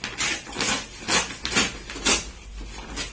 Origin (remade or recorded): recorded